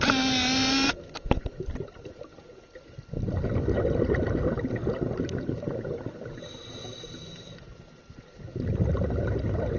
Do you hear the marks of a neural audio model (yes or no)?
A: no